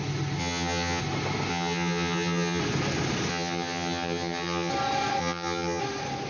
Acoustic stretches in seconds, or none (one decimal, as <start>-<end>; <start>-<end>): 0.0-0.4; 1.0-1.5; 2.6-3.3; 4.7-5.2; 5.8-6.3